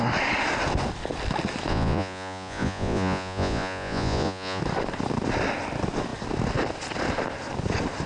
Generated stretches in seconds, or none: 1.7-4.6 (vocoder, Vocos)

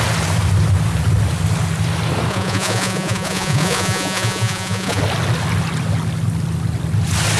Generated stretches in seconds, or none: 2.3-5.0 (vocoder, Vocos)

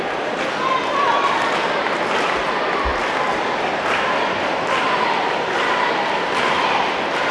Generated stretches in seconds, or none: none

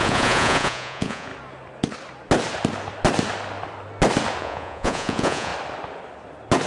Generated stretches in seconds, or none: 0.0-1.3 (vocoder, Vocos); 4.4-5.5

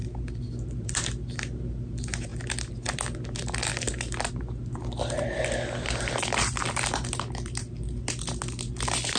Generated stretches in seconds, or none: none